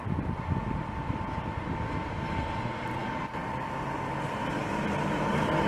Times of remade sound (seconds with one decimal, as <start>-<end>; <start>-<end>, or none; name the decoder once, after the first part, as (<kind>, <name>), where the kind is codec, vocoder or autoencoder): none